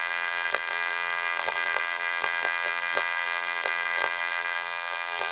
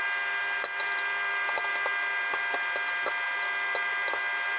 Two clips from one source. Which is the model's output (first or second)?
first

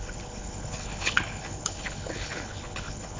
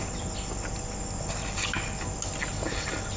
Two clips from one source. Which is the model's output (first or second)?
first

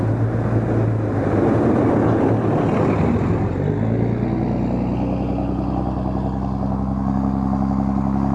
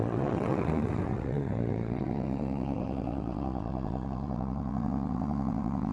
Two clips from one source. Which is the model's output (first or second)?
second